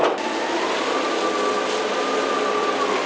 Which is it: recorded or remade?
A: recorded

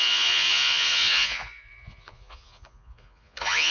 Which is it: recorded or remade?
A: remade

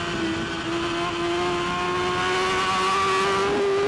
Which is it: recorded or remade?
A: recorded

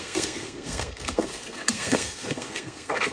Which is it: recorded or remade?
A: remade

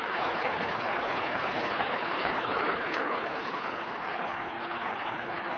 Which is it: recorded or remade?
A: remade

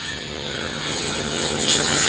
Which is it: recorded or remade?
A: remade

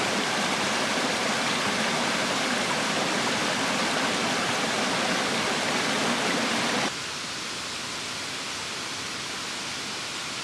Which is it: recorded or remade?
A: recorded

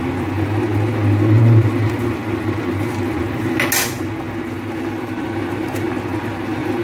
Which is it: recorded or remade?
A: recorded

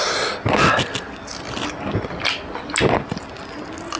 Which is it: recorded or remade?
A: recorded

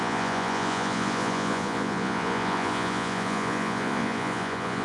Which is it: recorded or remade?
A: remade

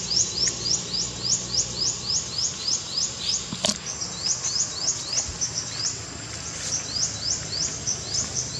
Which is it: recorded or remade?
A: recorded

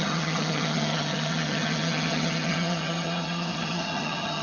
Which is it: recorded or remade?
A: remade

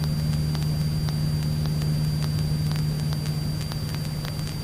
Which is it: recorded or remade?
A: recorded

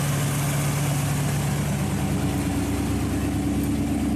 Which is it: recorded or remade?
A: recorded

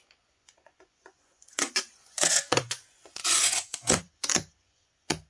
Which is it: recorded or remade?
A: remade